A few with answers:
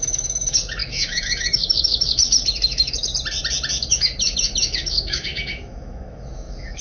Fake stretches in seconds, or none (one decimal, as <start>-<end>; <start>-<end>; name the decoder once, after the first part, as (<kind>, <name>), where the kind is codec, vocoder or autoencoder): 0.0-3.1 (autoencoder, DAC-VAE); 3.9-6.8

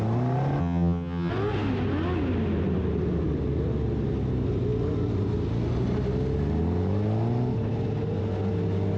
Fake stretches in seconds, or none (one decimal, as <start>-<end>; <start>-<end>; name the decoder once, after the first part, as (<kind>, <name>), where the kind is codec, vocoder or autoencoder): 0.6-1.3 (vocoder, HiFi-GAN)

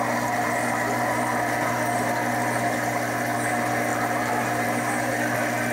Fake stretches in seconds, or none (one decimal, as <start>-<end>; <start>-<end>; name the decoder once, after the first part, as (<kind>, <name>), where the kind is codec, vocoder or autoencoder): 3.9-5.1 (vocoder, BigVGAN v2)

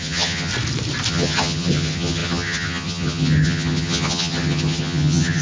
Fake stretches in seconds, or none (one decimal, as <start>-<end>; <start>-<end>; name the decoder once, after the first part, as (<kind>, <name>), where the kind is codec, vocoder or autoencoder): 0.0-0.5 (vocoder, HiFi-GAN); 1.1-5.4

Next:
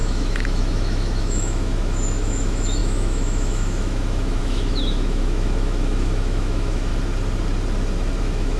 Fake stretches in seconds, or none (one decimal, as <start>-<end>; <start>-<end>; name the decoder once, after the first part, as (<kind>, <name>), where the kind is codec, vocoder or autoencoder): 0.0-6.9 (autoencoder, DAC-VAE); 8.2-8.6

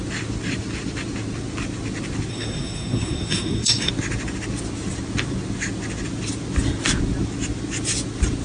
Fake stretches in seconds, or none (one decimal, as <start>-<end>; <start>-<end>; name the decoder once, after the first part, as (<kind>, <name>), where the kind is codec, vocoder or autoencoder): 2.3-3.9 (codec, SNAC)

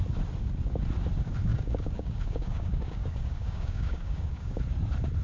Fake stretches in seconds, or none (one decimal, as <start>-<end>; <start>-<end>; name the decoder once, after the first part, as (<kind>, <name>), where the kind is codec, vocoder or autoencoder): 1.5-4.6 (codec, DAC)